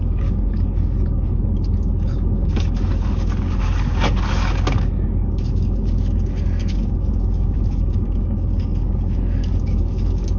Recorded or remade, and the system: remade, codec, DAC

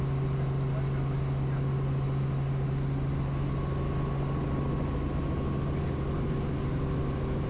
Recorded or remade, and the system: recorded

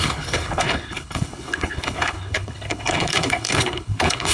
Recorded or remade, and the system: remade, codec, HILCodec